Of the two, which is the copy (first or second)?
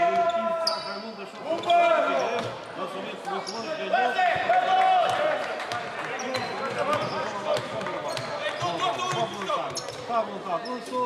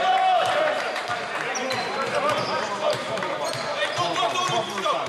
second